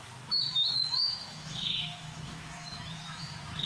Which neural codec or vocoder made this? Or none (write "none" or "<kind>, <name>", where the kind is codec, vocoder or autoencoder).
autoencoder, DAC-VAE